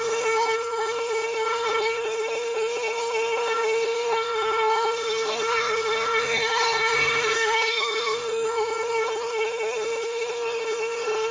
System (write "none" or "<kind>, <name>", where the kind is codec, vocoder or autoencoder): codec, SNAC